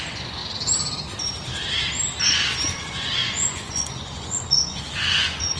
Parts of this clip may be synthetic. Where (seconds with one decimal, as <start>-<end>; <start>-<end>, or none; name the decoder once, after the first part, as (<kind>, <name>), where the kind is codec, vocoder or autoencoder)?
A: 0.0-0.4 (vocoder, Vocos); 2.8-5.6